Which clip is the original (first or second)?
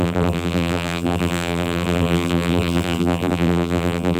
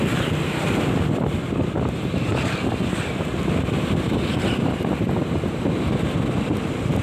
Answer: second